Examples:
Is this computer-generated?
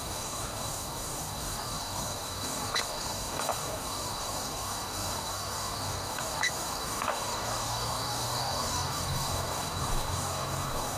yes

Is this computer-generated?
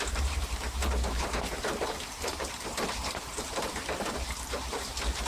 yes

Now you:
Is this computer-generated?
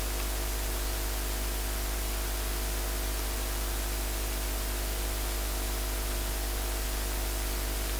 no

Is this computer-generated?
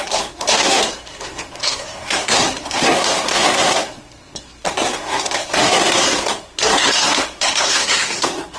yes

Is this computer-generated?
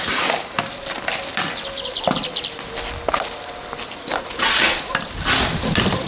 no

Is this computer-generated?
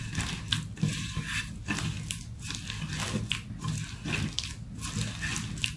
no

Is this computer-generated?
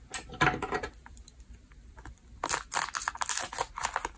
no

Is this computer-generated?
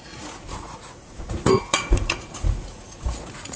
yes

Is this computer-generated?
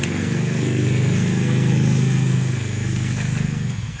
yes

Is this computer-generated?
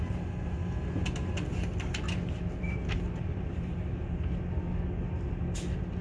no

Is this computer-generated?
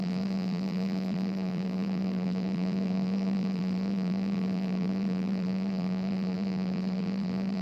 yes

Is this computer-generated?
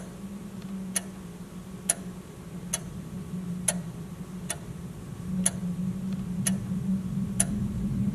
no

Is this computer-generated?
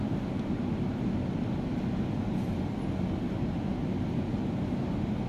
no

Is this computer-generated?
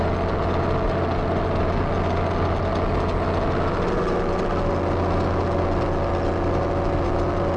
no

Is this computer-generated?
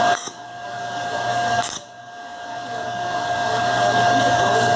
yes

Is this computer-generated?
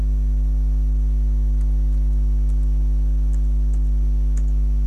no